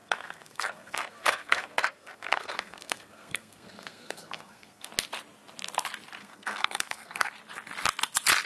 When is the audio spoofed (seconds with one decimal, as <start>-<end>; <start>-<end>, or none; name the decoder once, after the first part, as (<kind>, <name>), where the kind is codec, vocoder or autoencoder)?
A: 0.0-4.9 (codec, SNAC); 6.2-7.3